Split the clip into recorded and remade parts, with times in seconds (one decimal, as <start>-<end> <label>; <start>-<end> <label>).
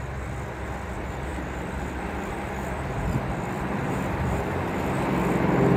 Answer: 0.0-1.3 recorded; 1.3-4.8 remade; 4.8-5.8 recorded